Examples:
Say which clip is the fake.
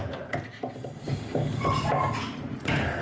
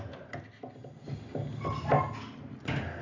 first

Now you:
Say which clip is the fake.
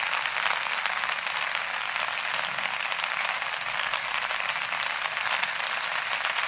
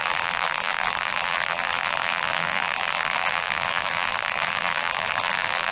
second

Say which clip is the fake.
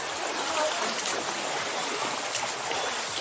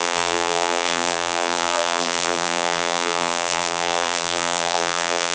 second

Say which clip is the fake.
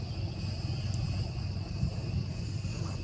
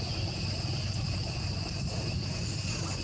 second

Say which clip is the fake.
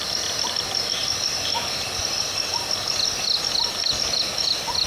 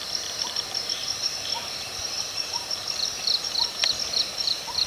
second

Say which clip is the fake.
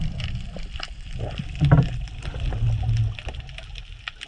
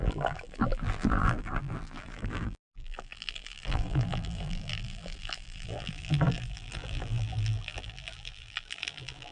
second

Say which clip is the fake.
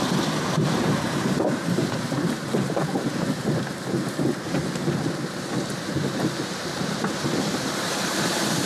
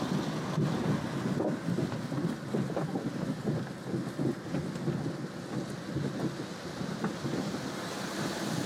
first